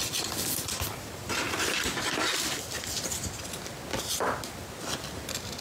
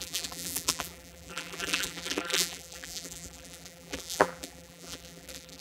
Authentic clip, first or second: first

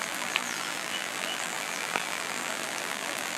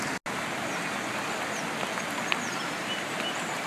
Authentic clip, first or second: second